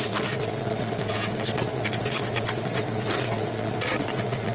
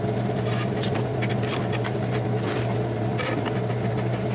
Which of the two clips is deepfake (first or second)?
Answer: first